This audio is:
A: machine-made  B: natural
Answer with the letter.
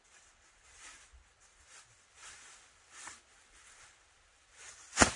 B